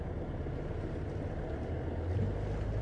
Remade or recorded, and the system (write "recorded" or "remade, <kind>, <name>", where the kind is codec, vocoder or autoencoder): recorded